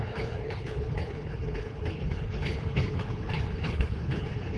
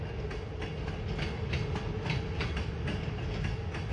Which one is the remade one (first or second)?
first